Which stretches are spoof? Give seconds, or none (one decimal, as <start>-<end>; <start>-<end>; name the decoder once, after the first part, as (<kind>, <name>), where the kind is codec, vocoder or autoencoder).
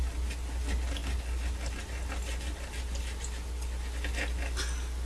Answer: none